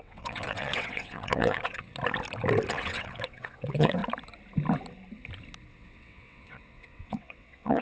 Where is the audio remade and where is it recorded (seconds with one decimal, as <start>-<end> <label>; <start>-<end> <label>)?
0.0-1.9 remade; 1.9-2.7 recorded; 2.7-4.0 remade; 4.0-5.7 recorded; 5.7-7.8 remade